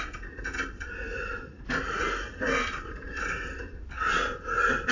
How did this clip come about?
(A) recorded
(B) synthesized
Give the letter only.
A